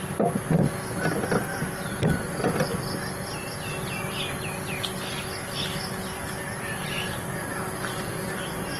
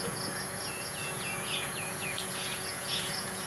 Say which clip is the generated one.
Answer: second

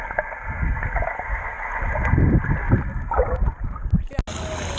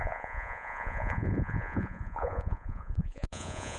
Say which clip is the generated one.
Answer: second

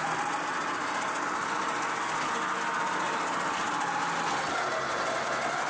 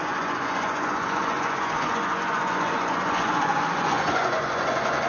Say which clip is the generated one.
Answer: second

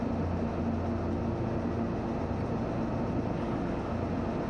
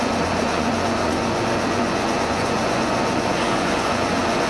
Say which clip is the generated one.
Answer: second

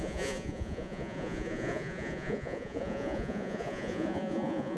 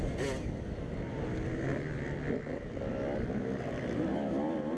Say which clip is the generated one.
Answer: first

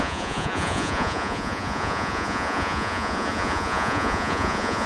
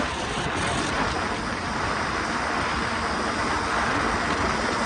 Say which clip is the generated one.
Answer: first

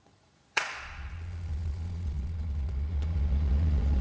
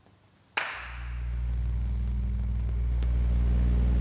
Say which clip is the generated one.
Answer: first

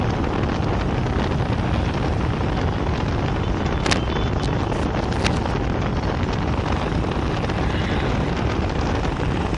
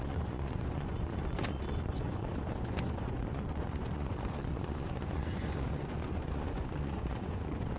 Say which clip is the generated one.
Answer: second